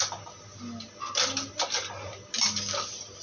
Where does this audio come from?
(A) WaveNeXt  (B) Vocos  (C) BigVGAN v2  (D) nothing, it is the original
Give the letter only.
D